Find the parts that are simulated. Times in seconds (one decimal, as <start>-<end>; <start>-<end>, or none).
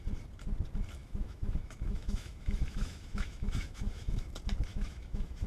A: 1.0-4.3; 4.7-5.5